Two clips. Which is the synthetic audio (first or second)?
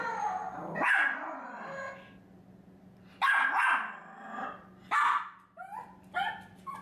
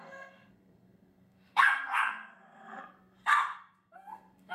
second